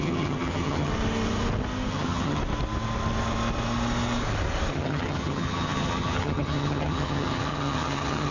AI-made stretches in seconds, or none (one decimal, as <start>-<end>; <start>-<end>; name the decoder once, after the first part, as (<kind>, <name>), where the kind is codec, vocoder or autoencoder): 0.0-0.9 (vocoder, HiFi-GAN); 1.9-2.4; 4.7-8.3